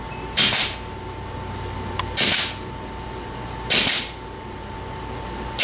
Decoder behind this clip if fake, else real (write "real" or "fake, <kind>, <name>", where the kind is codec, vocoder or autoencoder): real